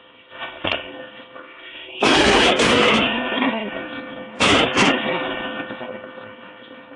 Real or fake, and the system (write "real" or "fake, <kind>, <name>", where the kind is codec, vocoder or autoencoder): fake, codec, SNAC